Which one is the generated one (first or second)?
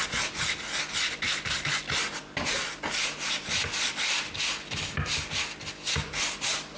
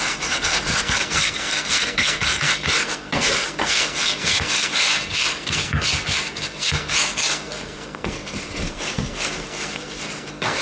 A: second